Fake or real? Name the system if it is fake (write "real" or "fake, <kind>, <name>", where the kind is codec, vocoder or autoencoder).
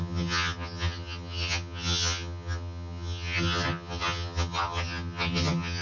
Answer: fake, vocoder, HiFi-GAN